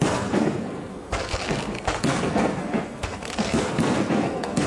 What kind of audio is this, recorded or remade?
remade